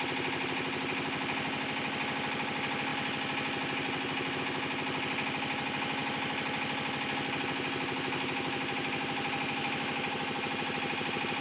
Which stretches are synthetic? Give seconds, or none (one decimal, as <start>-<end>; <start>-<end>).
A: none